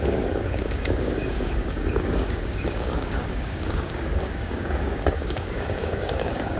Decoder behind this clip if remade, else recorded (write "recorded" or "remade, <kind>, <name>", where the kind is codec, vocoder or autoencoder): remade, codec, DAC